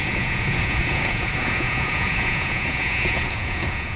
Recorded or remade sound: remade